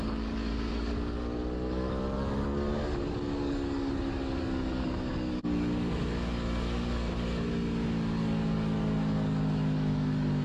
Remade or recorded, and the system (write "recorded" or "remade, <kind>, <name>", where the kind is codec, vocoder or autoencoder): remade, codec, DAC